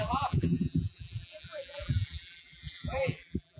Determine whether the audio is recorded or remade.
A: remade